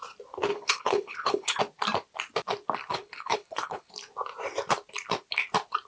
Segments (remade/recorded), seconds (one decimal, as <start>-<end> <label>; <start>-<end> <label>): 0.0-0.5 recorded; 0.5-1.6 remade; 1.6-2.9 recorded; 2.9-3.9 remade; 3.9-5.9 recorded

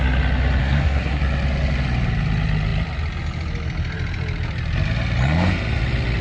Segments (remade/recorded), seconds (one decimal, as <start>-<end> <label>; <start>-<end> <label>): 0.0-0.6 recorded; 0.6-1.2 remade; 1.2-6.2 recorded

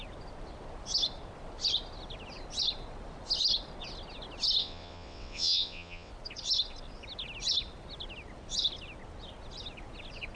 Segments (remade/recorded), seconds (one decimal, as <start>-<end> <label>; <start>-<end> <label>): 0.0-4.6 recorded; 4.6-6.1 remade; 6.1-10.4 recorded

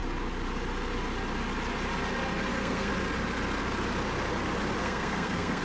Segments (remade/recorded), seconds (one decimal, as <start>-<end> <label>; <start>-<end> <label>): 0.0-2.5 recorded; 2.5-2.9 remade; 2.9-4.8 recorded; 4.8-5.6 remade